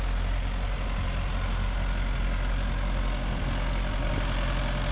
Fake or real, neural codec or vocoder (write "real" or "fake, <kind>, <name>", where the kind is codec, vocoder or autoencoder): real